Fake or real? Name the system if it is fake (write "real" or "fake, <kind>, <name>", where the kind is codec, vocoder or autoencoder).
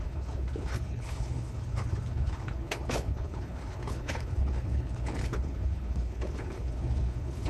fake, codec, HILCodec